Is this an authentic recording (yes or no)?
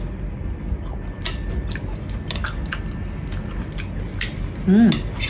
yes